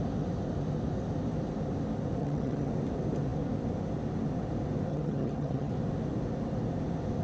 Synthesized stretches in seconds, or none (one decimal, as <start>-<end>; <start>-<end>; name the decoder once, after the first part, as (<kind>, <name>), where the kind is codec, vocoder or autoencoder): 2.2-2.7 (vocoder, HiFi-GAN); 4.9-5.7

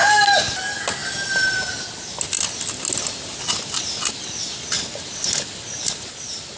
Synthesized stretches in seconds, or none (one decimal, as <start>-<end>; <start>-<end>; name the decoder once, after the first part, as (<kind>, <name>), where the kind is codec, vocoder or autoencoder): none

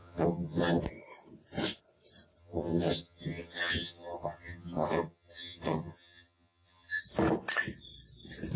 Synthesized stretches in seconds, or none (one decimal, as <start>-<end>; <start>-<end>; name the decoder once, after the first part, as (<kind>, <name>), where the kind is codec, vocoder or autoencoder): 0.0-0.8 (vocoder, HiFi-GAN); 2.4-7.0

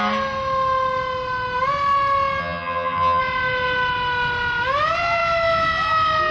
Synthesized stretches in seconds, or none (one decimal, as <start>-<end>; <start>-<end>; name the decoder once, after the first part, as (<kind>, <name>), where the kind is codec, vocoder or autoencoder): 2.4-3.2 (vocoder, HiFi-GAN)

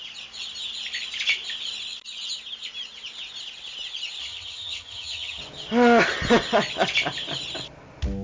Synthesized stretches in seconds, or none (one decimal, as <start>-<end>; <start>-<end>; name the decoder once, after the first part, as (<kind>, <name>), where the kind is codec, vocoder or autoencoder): 4.2-5.4 (vocoder, HiFi-GAN)

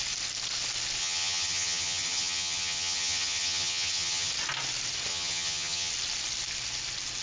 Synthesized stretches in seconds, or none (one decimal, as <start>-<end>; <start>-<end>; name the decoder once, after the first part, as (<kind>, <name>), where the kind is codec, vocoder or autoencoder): 1.0-4.3 (vocoder, HiFi-GAN); 5.1-5.9

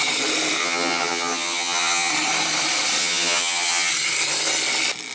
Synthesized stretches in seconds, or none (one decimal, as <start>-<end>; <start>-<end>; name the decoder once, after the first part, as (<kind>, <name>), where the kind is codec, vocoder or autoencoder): 0.6-2.1 (vocoder, HiFi-GAN); 3.0-3.9

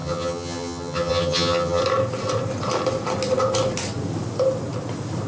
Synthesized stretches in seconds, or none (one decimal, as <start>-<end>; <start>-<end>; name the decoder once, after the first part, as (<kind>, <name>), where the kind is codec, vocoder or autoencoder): 0.0-1.8 (vocoder, HiFi-GAN)